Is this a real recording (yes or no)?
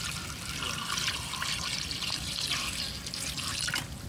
yes